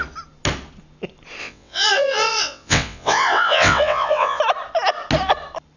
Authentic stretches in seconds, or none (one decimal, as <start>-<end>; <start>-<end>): 0.0-1.4; 4.4-5.8